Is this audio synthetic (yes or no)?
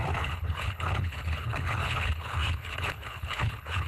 yes